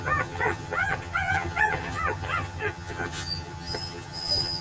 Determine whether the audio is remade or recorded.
remade